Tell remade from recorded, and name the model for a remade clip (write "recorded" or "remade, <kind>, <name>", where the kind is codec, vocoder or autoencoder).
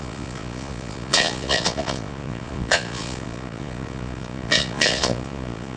remade, vocoder, Vocos